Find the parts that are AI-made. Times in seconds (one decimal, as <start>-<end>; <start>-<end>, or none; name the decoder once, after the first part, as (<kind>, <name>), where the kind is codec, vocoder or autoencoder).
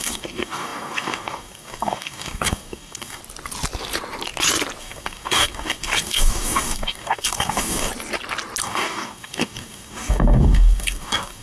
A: 0.0-3.2 (codec, DAC); 4.8-7.9; 8.6-11.4